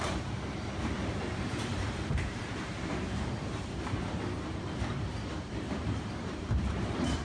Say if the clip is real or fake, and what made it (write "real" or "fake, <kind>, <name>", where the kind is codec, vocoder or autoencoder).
fake, vocoder, BigVGAN v2